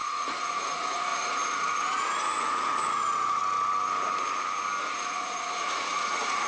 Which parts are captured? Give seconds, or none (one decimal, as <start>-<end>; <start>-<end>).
3.4-4.8